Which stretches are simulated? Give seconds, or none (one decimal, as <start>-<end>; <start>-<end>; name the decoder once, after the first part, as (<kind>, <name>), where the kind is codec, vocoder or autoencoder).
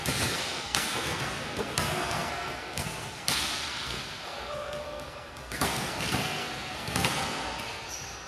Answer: 0.0-8.3 (codec, SNAC)